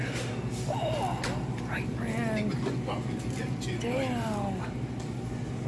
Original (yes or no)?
yes